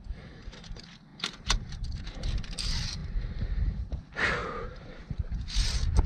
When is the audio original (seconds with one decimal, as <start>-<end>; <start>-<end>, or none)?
none